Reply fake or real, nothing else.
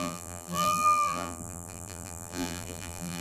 fake